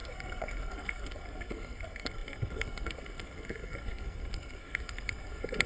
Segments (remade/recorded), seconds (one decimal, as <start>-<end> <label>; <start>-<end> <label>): 0.0-5.7 remade